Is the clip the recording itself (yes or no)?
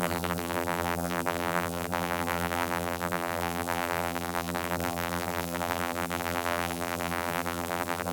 no